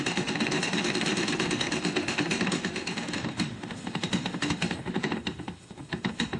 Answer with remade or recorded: remade